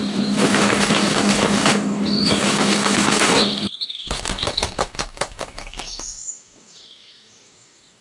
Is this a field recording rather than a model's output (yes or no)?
no